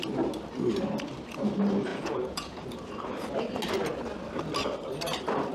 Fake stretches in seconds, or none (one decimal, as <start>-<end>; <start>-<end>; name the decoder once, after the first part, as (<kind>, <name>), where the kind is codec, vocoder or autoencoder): 1.9-2.6 (vocoder, Vocos)

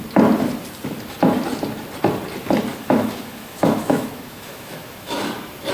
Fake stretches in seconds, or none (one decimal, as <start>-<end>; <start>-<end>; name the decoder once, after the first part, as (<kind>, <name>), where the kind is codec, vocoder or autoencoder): 2.7-5.2 (autoencoder, DAC-VAE)

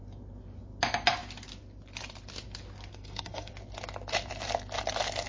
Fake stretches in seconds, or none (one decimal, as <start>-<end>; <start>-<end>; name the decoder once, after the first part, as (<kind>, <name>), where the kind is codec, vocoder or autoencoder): 2.9-3.5 (codec, SNAC)

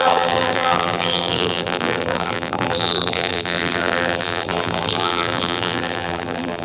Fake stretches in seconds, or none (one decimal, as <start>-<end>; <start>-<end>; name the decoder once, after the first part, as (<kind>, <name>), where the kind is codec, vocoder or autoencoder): 0.0-6.6 (vocoder, BigVGAN v2)

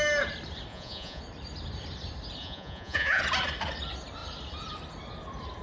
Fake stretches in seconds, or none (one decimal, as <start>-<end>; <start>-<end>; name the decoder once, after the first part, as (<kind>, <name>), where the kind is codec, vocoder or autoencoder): 0.7-1.2 (vocoder, Vocos); 2.4-3.2